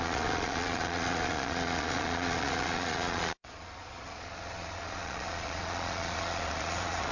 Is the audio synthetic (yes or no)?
yes